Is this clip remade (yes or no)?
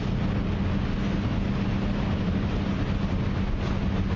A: no